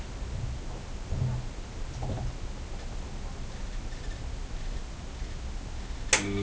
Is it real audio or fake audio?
real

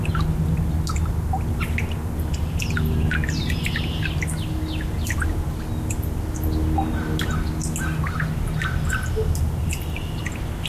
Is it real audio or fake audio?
real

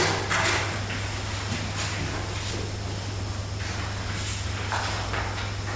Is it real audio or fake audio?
real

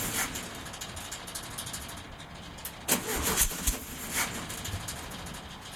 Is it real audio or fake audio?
real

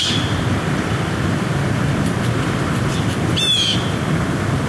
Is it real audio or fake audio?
fake